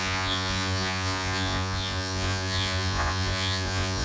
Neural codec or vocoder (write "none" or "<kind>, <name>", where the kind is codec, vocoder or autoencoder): vocoder, Vocos